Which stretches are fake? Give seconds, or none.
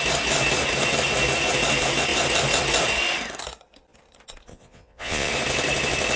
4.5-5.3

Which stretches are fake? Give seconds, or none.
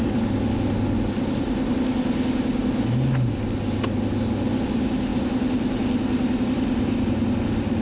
none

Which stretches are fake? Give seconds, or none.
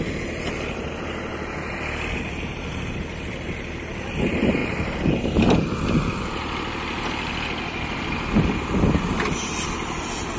none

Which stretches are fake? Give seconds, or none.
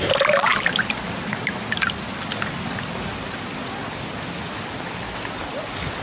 none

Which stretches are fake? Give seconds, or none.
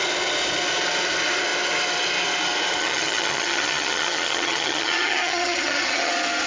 2.8-6.1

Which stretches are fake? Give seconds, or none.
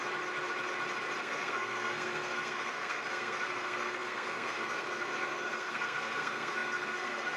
1.2-7.4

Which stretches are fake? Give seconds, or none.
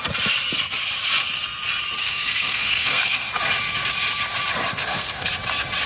2.0-3.3; 4.7-5.3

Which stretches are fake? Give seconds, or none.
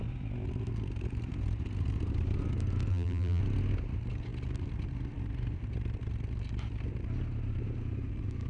2.9-3.4